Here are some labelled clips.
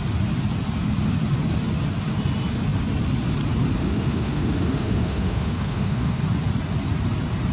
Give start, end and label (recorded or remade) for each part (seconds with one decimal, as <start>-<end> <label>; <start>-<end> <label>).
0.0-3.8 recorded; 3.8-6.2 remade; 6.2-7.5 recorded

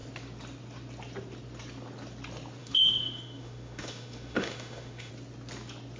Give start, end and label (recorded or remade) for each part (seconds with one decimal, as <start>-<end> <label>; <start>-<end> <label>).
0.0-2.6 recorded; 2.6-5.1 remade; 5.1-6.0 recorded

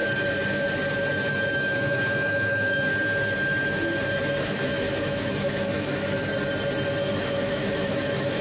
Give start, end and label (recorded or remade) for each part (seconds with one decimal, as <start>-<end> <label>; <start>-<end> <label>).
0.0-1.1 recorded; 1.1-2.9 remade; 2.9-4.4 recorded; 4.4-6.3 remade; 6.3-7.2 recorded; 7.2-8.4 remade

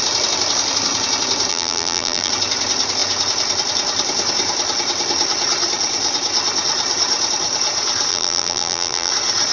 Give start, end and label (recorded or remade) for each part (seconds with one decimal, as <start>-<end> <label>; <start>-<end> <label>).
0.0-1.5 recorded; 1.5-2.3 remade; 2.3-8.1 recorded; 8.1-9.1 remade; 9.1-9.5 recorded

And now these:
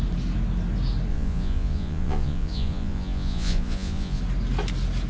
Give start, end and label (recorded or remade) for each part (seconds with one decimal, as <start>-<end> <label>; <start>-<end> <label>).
0.0-1.1 recorded; 1.1-4.2 remade; 4.2-5.1 recorded

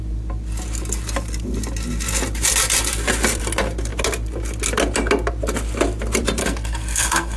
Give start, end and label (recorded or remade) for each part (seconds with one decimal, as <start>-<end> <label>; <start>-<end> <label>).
0.0-6.4 recorded; 6.4-7.4 remade

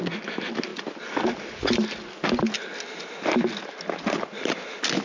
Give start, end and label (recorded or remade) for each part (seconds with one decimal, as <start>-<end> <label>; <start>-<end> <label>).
0.0-5.0 recorded